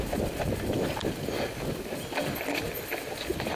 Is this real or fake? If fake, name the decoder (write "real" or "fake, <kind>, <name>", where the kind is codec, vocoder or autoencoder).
real